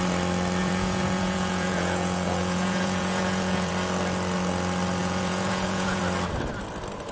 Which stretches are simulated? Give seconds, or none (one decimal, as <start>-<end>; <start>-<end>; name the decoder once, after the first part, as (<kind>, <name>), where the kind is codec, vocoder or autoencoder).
0.6-3.7 (vocoder, Vocos); 5.0-6.0